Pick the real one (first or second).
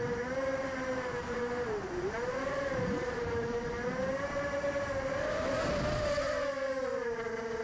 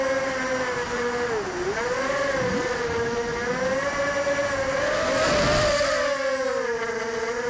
second